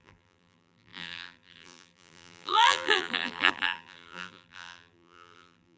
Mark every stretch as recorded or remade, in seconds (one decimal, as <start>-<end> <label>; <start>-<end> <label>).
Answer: 0.0-5.8 remade